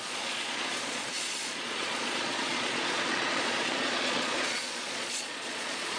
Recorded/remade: remade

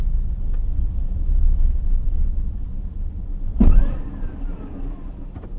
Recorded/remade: recorded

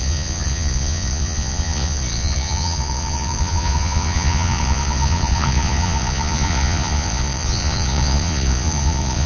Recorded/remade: remade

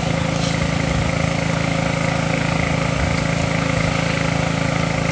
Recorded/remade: recorded